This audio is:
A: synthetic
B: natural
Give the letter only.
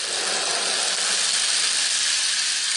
B